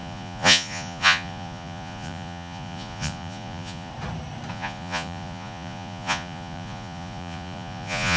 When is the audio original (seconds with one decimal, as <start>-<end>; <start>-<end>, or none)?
3.9-4.5